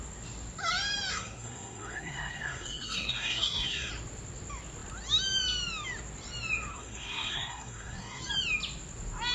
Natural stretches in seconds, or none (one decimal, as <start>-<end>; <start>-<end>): 0.0-1.1; 3.9-6.7; 8.2-9.3